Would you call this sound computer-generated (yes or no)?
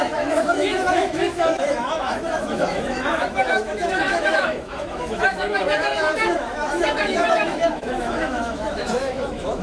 yes